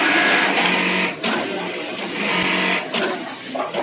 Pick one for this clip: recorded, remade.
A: recorded